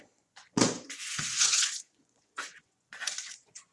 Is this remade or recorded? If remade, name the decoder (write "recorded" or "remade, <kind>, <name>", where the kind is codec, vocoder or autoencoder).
remade, vocoder, Vocos